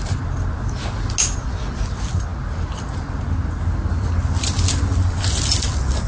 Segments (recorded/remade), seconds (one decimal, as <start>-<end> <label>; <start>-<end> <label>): 0.0-6.1 recorded